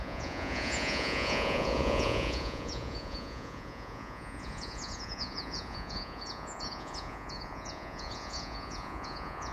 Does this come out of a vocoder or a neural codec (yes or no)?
yes